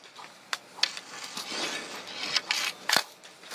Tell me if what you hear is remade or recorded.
recorded